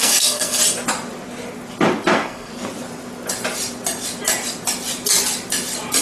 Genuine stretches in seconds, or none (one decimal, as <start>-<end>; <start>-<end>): 0.6-2.1; 2.5-6.0